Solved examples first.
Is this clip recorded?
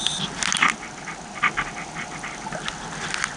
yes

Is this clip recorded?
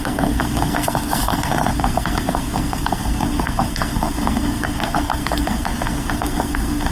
no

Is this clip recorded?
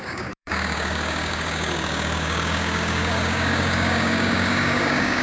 no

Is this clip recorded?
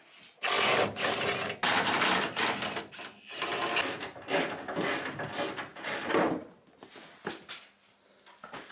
yes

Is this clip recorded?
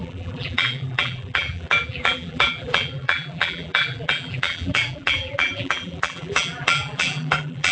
no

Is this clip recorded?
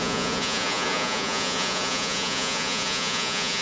no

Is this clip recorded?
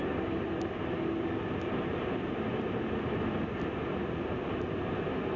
no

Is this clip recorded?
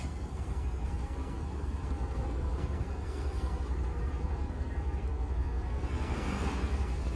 no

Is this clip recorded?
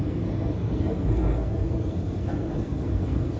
no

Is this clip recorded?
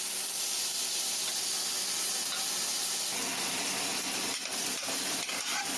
yes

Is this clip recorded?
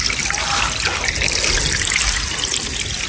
yes